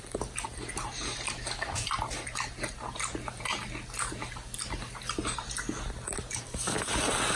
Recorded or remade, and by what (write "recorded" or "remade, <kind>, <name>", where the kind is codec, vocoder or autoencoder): recorded